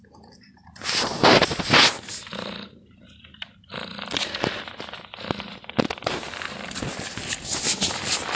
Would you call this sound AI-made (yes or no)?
no